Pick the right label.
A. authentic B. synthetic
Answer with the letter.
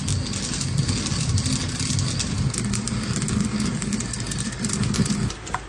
A